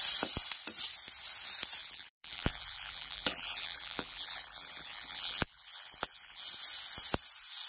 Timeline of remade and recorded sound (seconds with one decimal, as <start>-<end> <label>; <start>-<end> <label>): 0.0-1.8 recorded; 1.8-6.4 remade; 6.4-7.7 recorded